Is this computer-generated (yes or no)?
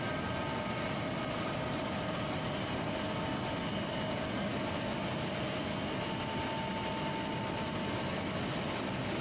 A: no